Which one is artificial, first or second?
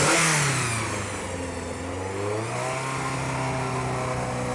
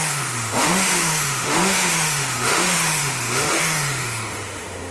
second